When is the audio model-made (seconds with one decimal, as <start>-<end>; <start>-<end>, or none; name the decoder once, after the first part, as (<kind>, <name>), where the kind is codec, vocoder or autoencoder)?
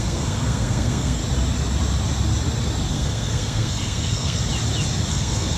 0.0-1.2 (codec, SNAC); 2.9-4.4; 5.1-5.6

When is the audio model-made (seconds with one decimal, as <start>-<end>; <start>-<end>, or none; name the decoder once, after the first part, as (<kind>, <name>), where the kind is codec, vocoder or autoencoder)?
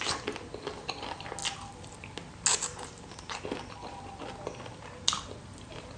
none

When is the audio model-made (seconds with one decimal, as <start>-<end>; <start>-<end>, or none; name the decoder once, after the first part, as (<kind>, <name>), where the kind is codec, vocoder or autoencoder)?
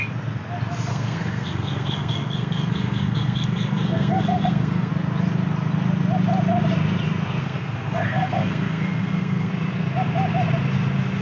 0.9-4.9 (codec, SNAC); 7.4-9.5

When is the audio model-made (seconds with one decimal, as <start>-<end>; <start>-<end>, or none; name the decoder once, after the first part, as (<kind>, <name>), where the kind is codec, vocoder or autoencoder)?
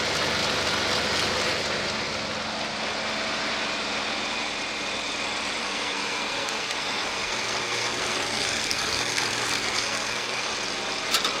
5.6-10.5 (codec, SNAC)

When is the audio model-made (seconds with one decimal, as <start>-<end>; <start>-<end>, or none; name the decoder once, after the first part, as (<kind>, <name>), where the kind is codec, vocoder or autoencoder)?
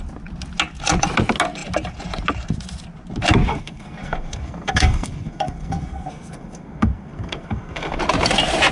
3.5-8.0 (codec, SNAC)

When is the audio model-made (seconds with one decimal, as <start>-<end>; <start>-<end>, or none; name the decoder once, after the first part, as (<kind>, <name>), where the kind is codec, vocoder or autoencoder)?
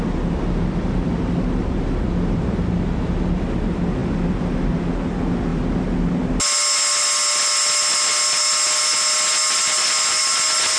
none